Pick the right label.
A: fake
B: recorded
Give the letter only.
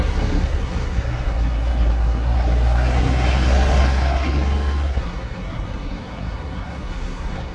A